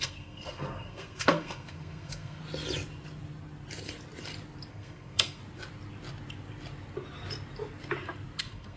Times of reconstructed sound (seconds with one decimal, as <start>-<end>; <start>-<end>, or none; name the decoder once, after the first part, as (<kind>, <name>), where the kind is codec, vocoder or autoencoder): 0.0-2.4 (codec, SNAC); 4.7-5.4; 8.4-8.8